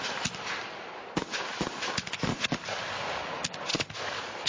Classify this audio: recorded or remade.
recorded